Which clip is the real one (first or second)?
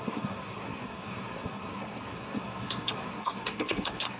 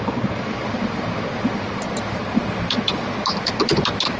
second